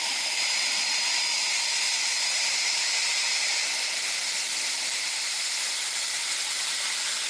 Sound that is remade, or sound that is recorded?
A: recorded